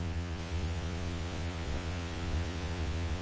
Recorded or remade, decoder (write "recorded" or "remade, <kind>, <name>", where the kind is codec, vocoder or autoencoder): remade, vocoder, Vocos